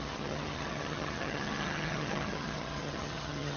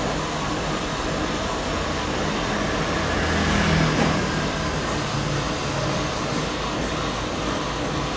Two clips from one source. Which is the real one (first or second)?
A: second